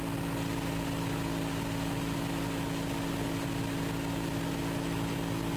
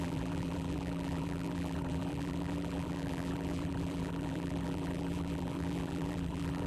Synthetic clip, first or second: second